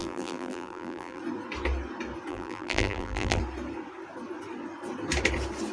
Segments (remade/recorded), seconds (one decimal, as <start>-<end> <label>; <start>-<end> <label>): 0.0-1.2 remade; 1.2-2.3 recorded; 2.3-3.4 remade; 3.4-5.7 recorded